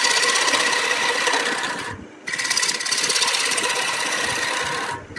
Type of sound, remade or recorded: recorded